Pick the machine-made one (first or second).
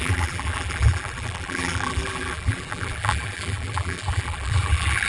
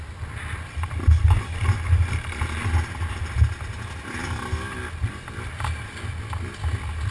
first